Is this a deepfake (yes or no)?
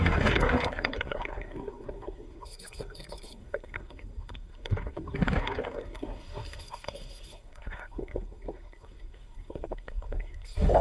yes